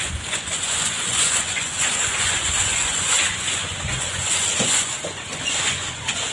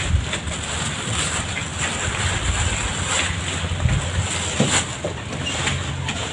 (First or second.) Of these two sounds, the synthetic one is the first